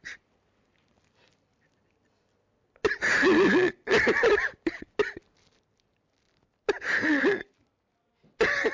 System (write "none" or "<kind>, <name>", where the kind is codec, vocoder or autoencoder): none